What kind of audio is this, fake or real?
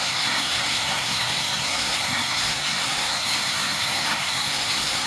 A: fake